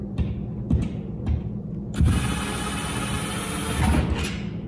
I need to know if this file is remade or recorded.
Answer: recorded